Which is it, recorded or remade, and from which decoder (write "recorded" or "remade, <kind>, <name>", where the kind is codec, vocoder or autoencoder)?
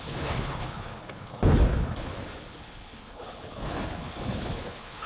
remade, codec, HILCodec